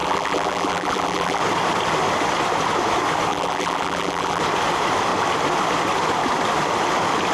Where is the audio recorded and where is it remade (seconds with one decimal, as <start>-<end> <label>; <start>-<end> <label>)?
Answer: 0.0-1.4 remade; 1.4-3.3 recorded; 3.3-4.4 remade; 4.4-7.3 recorded